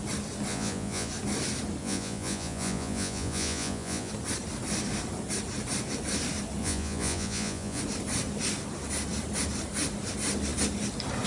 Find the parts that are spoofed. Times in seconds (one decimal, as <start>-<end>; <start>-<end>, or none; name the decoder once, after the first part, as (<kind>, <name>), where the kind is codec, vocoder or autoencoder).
0.5-1.1 (vocoder, Vocos); 1.8-4.1; 6.6-7.8